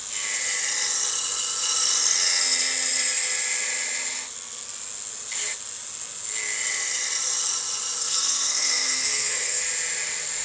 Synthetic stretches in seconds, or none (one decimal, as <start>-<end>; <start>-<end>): 8.0-9.6